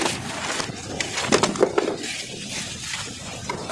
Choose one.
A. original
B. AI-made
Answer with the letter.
A